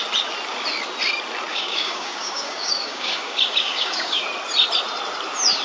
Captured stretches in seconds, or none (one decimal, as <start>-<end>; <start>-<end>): 0.0-1.5; 4.2-5.6

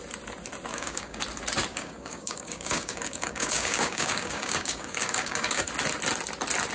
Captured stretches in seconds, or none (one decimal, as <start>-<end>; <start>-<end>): 0.0-0.7; 1.2-1.7; 5.7-6.7

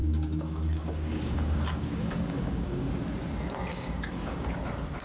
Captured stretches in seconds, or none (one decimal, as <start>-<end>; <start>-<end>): 2.9-3.7; 4.6-5.0

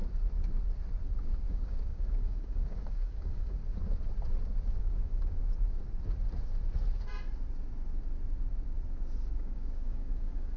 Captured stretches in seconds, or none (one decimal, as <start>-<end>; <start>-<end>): 0.0-1.5; 3.6-4.8; 5.4-9.4

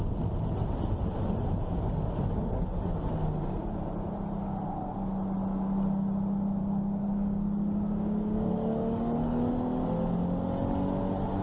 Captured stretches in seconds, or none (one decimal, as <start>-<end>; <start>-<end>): 0.0-6.6; 9.5-11.4

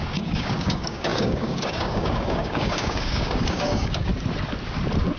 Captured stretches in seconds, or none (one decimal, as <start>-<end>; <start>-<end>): 4.1-5.2

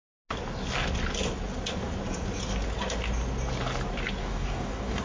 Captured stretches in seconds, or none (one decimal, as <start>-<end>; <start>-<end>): 0.0-4.2

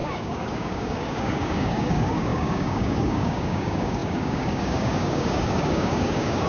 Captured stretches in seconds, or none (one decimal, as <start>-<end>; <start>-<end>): none